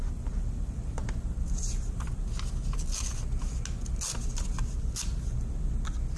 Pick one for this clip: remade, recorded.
recorded